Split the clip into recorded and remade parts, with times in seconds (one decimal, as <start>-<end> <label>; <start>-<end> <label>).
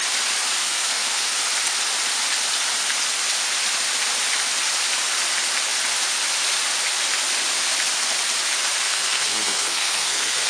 0.0-0.6 recorded; 0.6-1.3 remade; 1.3-8.8 recorded; 8.8-10.5 remade